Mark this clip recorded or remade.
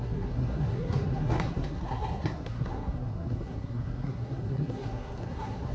remade